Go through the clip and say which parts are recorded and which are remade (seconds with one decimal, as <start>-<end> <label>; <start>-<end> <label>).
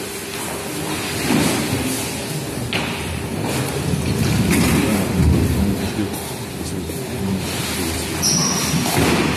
0.0-3.3 recorded; 3.3-4.7 remade; 4.7-8.4 recorded; 8.4-9.4 remade